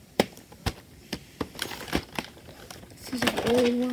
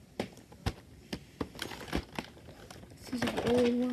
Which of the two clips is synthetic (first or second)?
first